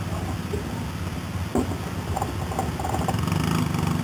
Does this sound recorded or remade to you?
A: recorded